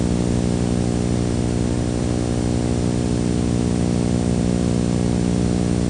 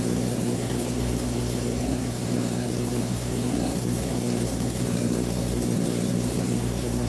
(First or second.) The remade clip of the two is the second